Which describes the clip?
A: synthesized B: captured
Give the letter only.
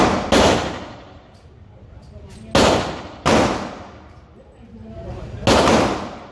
B